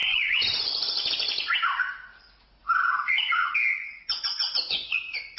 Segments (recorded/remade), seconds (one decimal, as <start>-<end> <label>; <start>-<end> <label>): 0.0-1.1 remade; 1.1-3.7 recorded; 3.7-5.4 remade